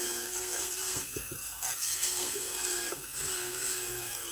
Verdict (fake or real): fake